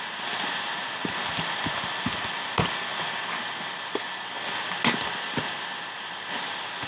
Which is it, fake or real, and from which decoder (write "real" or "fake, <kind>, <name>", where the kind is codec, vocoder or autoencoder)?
real